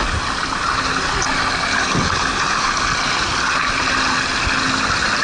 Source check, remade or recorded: recorded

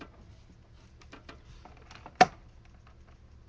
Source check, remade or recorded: recorded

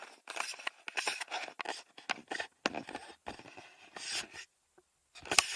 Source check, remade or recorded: recorded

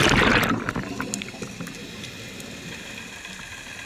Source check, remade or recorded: recorded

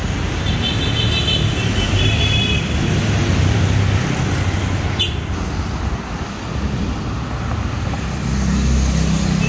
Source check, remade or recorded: recorded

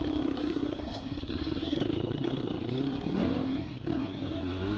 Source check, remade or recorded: remade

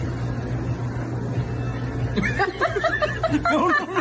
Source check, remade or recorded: recorded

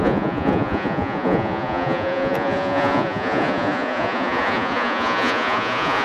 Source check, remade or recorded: remade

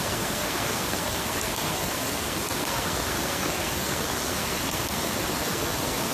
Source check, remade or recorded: remade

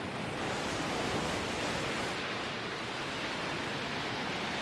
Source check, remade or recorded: recorded